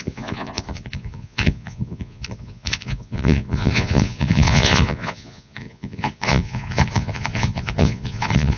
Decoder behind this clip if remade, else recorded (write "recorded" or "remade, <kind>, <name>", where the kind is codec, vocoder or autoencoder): remade, vocoder, Vocos